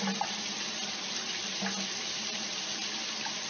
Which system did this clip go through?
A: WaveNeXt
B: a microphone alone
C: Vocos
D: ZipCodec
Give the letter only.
B